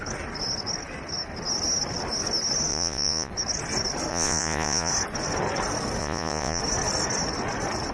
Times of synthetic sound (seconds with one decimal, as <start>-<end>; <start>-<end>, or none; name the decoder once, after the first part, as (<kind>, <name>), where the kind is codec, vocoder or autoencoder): 2.7-3.3 (vocoder, Vocos); 4.1-4.9; 6.0-6.6